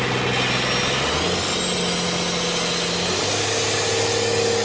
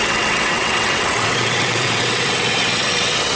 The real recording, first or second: first